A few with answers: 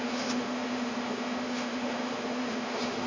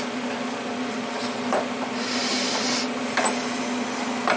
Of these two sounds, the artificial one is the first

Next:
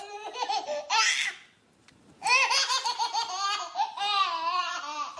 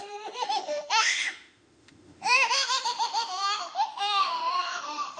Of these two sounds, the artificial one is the second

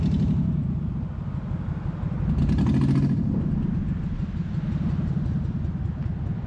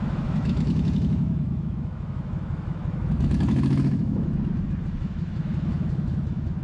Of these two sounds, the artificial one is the second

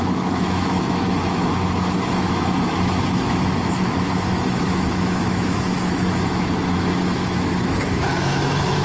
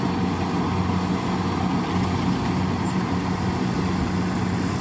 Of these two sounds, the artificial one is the first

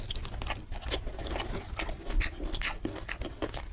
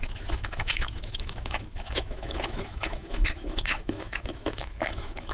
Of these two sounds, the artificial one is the second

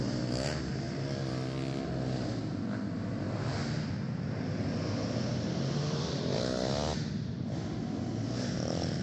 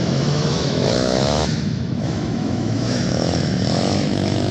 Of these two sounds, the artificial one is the second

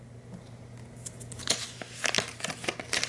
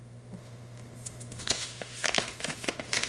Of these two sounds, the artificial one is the second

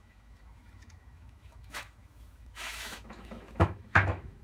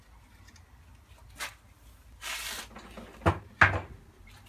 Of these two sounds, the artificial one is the first